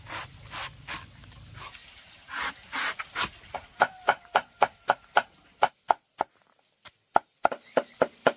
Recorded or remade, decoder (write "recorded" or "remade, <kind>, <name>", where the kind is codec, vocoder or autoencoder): remade, vocoder, BigVGAN v2